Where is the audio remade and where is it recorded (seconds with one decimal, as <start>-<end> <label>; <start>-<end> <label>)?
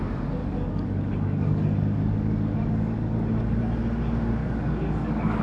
0.0-0.4 recorded; 0.4-3.6 remade; 3.6-4.4 recorded; 4.4-5.4 remade